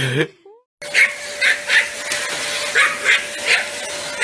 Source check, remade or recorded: recorded